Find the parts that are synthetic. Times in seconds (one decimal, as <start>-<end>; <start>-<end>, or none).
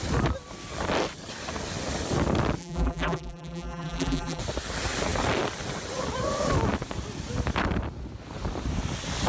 2.6-4.4